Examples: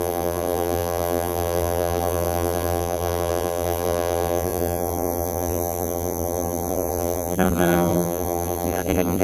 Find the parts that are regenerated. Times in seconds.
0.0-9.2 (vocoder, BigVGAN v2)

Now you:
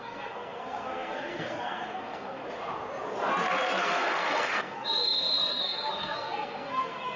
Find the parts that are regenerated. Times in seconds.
0.0-2.4 (codec, SNAC); 3.8-7.2

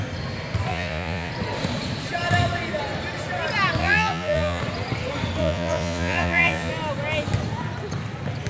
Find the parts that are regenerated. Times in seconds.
0.7-1.3 (vocoder, Vocos); 3.8-4.6; 5.4-6.7